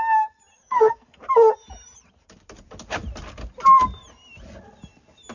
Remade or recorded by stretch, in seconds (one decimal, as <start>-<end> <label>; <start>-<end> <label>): 0.0-0.5 recorded; 0.5-1.2 remade; 1.2-5.3 recorded